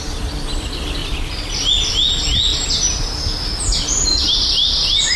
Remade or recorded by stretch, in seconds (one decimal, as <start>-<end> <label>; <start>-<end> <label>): 0.0-5.2 recorded